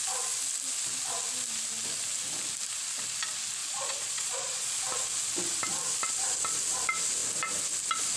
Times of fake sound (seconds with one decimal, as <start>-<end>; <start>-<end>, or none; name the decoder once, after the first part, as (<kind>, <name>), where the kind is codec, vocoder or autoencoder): 3.6-4.8 (vocoder, Vocos)